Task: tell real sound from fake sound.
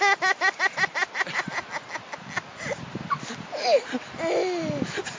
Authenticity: real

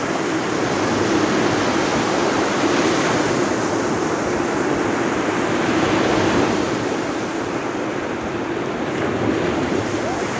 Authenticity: real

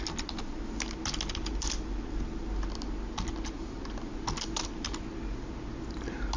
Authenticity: real